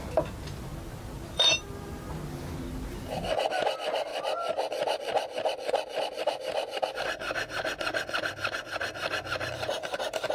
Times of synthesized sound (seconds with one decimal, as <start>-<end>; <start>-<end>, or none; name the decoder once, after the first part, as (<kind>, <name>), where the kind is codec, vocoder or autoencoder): 0.7-2.3 (vocoder, BigVGAN v2); 4.1-6.0